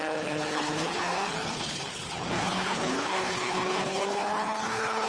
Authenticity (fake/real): fake